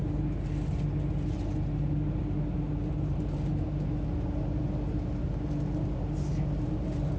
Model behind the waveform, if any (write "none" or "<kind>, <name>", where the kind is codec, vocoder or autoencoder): none